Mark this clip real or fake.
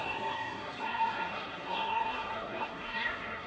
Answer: fake